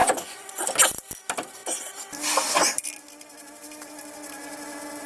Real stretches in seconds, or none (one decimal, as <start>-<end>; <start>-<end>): 0.6-5.1